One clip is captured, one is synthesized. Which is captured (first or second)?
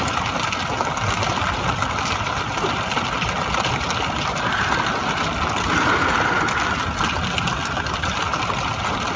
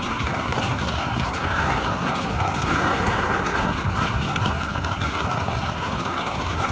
first